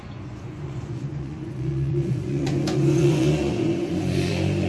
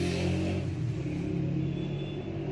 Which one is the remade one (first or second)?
first